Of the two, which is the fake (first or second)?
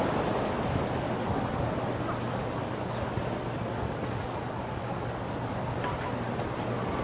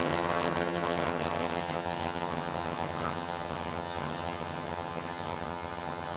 second